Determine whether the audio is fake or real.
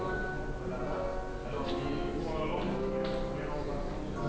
real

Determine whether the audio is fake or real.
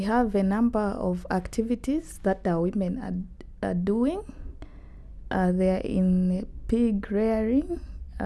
real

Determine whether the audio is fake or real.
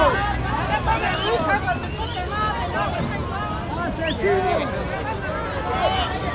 real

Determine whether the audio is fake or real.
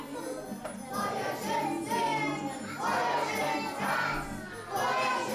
real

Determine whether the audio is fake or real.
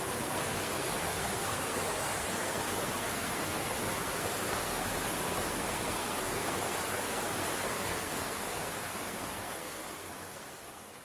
fake